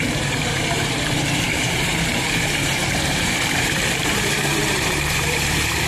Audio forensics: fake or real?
fake